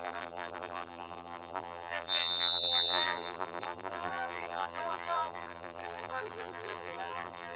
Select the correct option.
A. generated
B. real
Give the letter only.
A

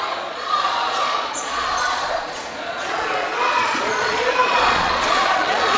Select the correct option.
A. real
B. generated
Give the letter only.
B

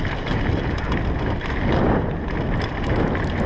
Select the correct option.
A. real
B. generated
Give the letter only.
A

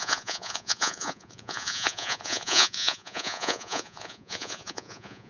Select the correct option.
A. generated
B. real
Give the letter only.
A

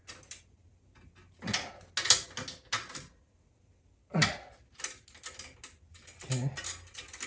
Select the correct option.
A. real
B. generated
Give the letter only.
A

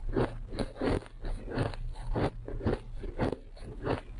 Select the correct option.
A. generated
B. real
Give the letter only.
B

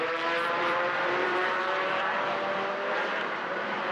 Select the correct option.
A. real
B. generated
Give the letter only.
B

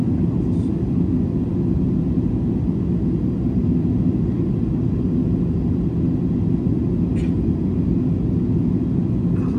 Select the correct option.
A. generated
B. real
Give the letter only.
B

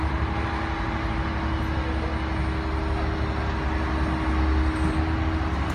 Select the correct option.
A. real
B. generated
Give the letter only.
A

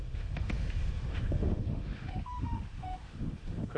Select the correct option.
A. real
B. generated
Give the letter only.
B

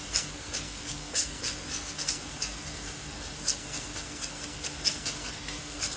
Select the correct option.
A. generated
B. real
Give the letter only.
A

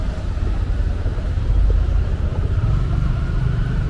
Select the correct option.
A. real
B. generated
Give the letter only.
B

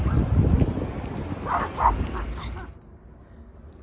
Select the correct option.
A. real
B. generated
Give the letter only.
A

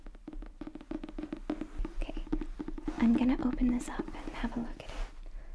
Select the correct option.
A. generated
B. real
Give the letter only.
B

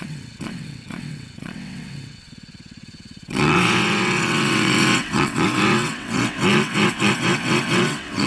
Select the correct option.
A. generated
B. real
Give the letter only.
A